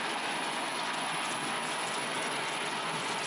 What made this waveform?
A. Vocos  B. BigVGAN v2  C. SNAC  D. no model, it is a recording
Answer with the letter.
A